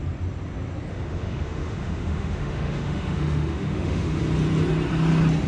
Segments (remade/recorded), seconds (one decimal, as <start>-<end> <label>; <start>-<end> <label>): 0.0-0.9 recorded; 0.9-4.2 remade; 4.2-5.5 recorded